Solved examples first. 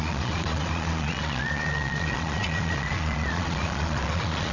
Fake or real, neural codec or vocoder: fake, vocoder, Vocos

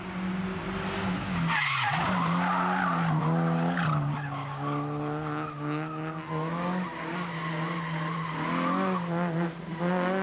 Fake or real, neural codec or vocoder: real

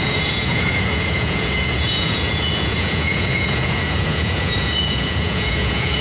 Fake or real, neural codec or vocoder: fake, vocoder, Vocos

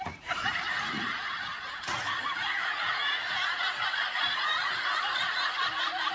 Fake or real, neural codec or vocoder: fake, vocoder, Vocos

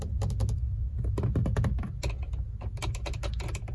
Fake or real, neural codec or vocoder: real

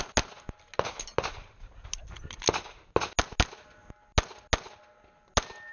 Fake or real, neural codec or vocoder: real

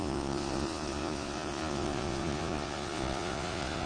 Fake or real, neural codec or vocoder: fake, vocoder, Vocos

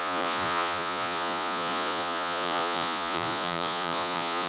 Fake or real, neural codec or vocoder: fake, vocoder, Vocos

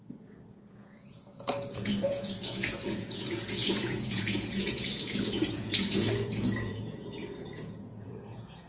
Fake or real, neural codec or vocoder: fake, vocoder, Vocos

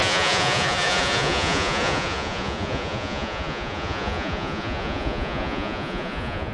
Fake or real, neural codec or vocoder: fake, vocoder, Vocos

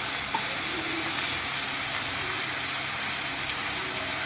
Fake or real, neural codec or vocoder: real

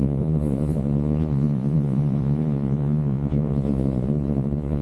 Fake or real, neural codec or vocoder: fake, vocoder, Vocos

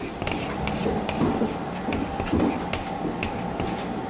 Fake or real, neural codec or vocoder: real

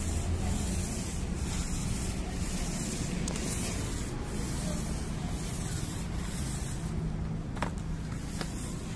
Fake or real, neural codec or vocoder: real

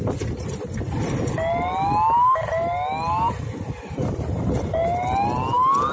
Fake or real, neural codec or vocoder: real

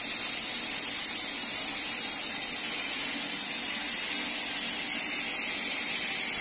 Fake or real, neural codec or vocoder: real